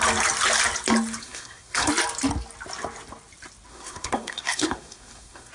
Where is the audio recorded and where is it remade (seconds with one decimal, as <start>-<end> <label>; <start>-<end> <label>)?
0.0-1.2 recorded; 1.2-1.9 remade; 1.9-3.7 recorded; 3.7-5.5 remade